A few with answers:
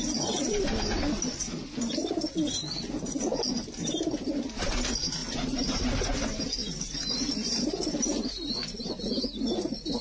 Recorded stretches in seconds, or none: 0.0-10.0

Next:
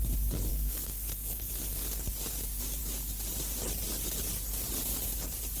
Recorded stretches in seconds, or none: 0.0-0.5; 1.5-5.6